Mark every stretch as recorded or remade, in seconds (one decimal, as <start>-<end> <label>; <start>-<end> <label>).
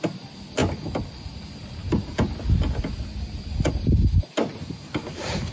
0.0-5.5 recorded